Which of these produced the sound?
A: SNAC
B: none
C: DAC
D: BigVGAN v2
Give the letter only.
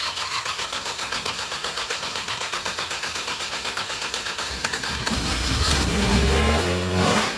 A